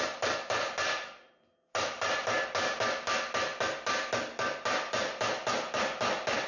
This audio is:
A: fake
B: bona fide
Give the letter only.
B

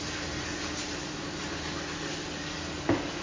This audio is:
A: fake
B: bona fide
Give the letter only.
B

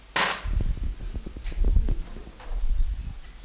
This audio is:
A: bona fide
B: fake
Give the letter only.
A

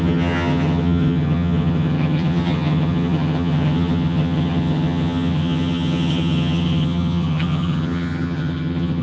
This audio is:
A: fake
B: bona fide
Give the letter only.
A